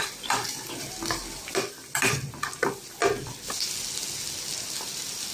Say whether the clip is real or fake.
real